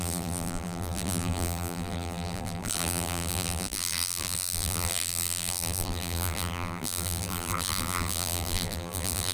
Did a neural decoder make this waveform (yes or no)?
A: yes